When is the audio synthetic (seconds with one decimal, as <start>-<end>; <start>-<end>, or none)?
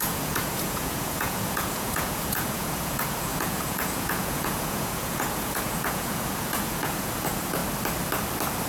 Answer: 0.0-7.6